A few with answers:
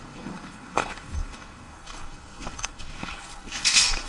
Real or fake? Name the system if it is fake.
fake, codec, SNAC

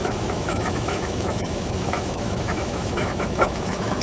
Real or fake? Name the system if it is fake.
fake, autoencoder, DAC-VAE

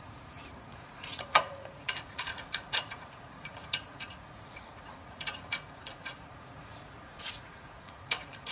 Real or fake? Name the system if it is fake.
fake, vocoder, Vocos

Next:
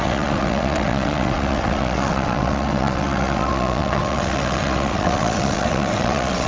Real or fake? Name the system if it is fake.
fake, vocoder, WaveNeXt